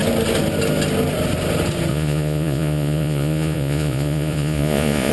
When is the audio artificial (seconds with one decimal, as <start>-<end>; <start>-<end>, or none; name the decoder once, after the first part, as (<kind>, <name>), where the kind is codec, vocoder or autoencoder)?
1.9-5.1 (vocoder, Vocos)